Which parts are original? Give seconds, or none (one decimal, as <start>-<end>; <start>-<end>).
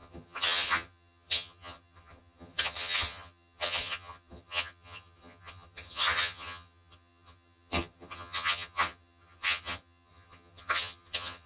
none